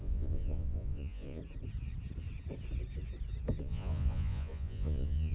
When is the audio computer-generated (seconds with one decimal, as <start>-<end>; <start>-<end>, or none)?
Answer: 0.0-1.4; 3.6-5.3